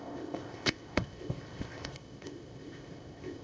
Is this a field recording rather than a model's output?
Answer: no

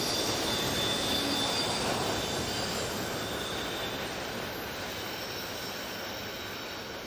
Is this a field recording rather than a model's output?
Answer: yes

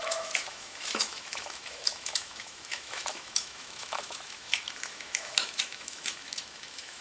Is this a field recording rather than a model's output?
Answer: no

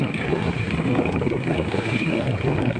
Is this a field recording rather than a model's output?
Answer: no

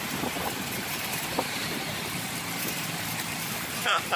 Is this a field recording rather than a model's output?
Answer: no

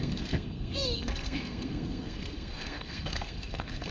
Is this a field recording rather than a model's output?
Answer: no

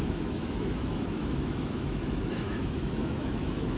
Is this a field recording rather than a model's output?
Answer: no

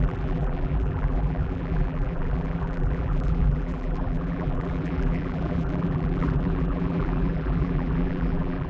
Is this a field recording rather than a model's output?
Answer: no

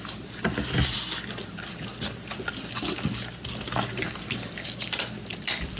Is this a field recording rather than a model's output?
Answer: yes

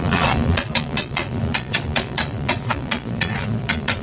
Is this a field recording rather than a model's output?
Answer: no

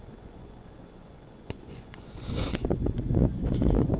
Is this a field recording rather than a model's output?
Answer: no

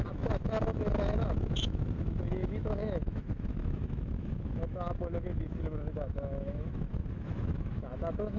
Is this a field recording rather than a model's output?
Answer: no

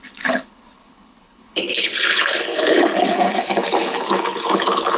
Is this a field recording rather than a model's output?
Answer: no